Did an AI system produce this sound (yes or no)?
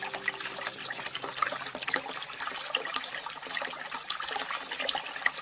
no